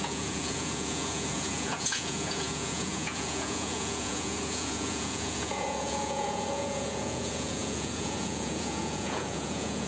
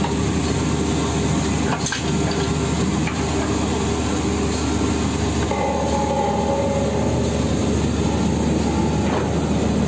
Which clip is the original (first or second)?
second